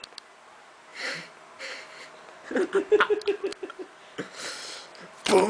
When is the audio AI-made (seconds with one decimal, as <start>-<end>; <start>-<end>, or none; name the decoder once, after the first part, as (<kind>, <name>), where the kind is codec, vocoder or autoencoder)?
0.9-1.6 (vocoder, BigVGAN v2); 3.5-5.5